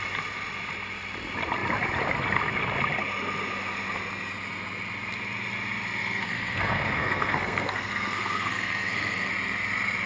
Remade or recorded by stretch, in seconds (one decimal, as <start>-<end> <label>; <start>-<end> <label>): 0.0-6.0 recorded; 6.0-9.3 remade; 9.3-10.1 recorded